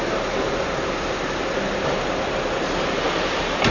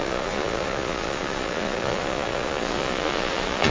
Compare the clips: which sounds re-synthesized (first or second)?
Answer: second